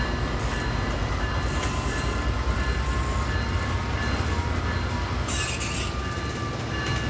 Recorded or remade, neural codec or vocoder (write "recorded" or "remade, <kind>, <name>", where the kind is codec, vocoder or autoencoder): recorded